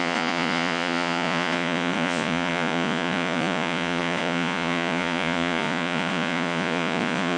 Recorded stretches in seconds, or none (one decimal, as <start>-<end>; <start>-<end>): none